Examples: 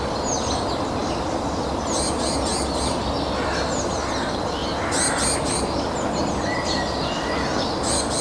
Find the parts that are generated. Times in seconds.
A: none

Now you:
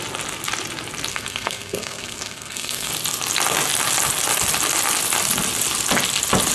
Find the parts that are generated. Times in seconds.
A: 1.1-2.9 (codec, SNAC)

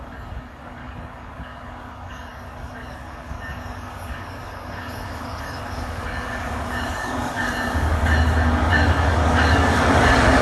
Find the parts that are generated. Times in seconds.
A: 0.0-8.0 (codec, DAC); 8.7-10.4